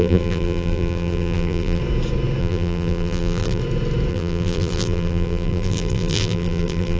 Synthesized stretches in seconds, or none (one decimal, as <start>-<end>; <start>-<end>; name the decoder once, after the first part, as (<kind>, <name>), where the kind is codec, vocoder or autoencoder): 0.0-1.8 (vocoder, BigVGAN v2); 2.4-3.6; 4.1-7.0